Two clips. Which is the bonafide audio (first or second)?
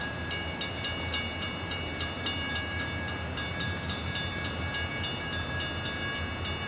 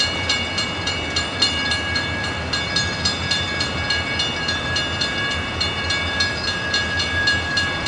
first